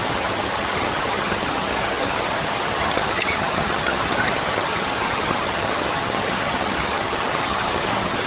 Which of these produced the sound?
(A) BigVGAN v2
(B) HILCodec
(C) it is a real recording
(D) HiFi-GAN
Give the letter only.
D